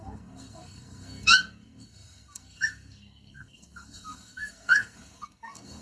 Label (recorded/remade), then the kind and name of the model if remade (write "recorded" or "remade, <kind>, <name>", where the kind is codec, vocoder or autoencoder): remade, codec, SNAC